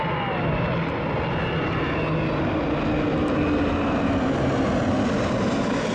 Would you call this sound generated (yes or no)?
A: no